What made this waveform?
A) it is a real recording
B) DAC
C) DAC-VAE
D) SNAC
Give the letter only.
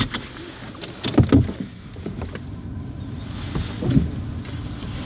A